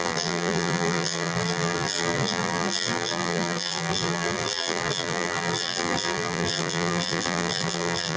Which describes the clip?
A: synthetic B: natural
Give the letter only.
A